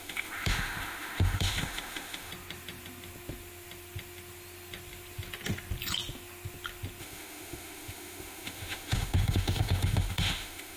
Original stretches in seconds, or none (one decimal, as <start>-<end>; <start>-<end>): 2.3-7.0